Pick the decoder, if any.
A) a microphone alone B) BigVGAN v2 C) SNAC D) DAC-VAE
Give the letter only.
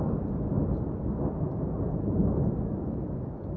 A